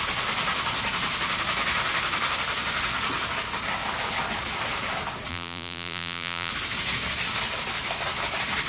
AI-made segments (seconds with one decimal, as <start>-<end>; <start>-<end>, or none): 5.3-6.5

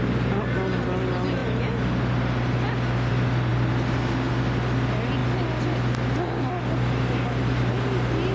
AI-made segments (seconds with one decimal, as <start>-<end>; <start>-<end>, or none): none

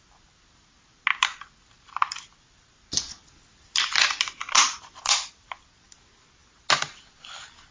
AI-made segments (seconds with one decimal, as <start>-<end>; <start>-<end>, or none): none

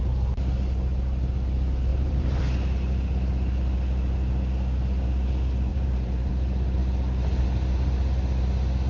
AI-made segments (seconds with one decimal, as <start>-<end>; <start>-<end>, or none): 1.9-2.4; 5.7-6.3

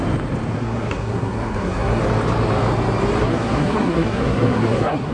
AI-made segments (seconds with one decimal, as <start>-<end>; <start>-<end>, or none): 0.5-2.0; 3.2-5.1

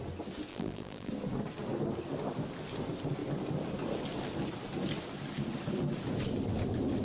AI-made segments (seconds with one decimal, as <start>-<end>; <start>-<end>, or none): 0.5-1.1

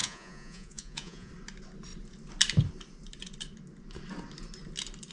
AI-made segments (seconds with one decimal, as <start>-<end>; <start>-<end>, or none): 0.0-1.3

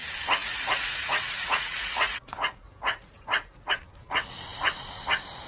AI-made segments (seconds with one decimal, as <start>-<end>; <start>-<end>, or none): 0.4-3.7